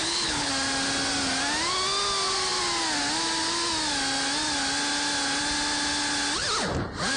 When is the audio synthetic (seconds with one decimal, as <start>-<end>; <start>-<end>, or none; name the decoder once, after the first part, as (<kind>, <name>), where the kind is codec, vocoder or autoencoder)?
0.0-0.5 (codec, HILCodec)